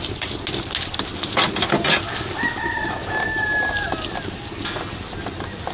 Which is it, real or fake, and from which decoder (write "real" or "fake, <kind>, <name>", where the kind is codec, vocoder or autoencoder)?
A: real